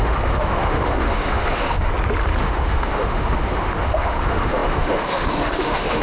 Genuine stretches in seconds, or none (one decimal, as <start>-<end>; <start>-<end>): 1.9-2.4